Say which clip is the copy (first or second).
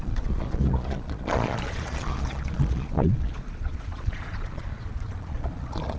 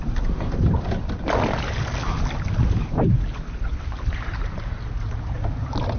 first